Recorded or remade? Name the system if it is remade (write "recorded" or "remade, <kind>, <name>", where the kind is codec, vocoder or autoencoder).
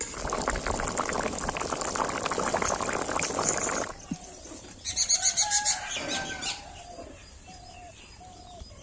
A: recorded